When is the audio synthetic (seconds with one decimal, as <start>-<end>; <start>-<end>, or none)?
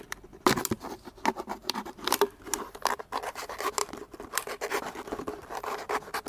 1.6-2.5; 3.8-4.7